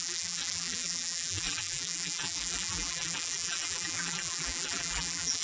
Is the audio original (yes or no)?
no